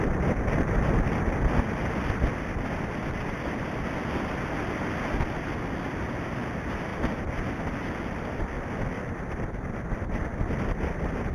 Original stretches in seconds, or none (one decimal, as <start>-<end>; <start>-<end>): 0.0-11.3